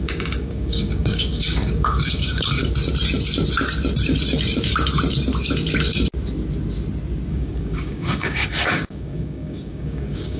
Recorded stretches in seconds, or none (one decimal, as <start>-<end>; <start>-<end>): 2.6-7.3